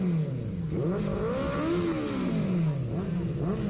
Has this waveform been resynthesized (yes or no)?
no